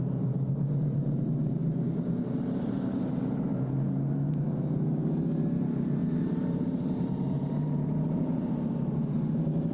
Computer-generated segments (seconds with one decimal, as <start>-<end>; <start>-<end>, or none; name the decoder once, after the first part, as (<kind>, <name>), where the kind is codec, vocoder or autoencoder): 0.0-3.5 (vocoder, BigVGAN v2); 4.3-9.7